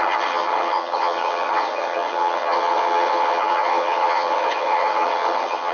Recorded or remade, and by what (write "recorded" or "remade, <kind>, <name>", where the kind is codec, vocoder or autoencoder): remade, vocoder, HiFi-GAN